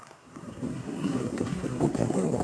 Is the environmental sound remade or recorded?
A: remade